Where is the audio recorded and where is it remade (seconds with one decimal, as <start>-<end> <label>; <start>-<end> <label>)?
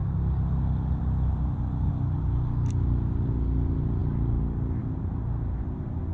0.0-6.1 recorded